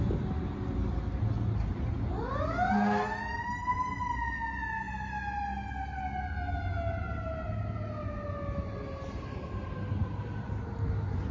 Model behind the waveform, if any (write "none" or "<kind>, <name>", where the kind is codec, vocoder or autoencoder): none